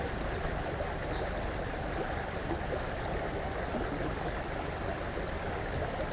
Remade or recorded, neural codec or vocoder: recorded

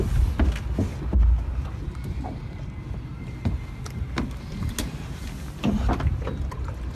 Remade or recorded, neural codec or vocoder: recorded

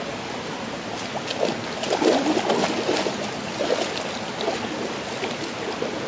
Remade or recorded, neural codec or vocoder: recorded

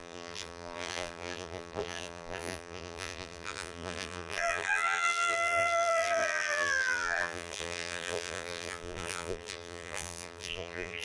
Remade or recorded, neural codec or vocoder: remade, vocoder, BigVGAN v2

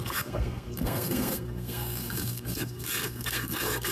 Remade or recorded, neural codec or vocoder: remade, codec, SNAC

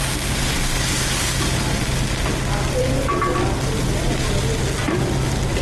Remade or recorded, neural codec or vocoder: recorded